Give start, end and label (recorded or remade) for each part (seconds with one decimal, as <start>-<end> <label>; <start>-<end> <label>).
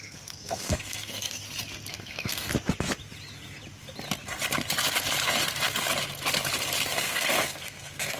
0.0-1.4 remade; 1.4-1.9 recorded; 1.9-2.5 remade; 2.5-6.9 recorded; 6.9-8.2 remade